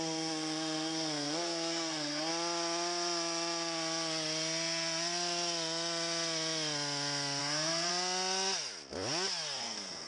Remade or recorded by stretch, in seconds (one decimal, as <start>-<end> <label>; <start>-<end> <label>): 0.0-2.3 remade; 2.3-7.4 recorded; 7.4-7.9 remade; 7.9-9.6 recorded; 9.6-10.1 remade